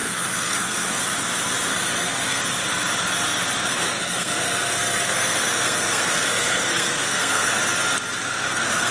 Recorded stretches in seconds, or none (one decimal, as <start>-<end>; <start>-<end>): 1.0-1.7; 2.4-3.6; 7.6-8.2